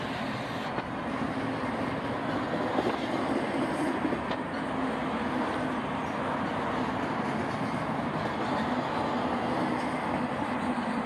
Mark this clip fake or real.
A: real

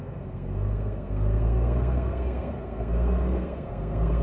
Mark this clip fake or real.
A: fake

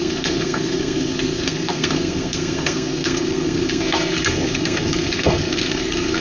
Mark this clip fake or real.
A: fake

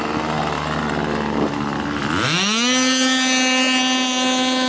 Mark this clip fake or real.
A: real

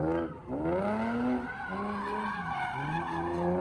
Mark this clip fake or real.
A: real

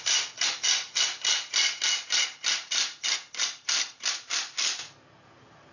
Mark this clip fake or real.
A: real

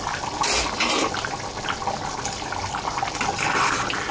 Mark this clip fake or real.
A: real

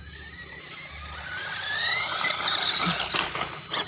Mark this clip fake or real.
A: real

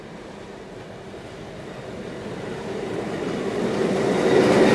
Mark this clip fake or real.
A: real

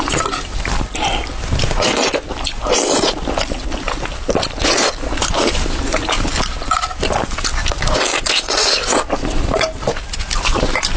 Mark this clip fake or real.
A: real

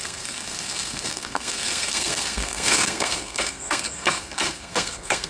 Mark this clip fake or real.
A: fake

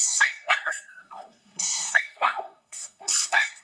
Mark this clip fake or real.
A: fake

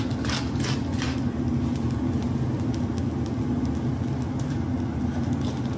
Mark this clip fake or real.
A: real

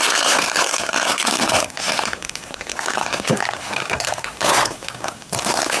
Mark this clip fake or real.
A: fake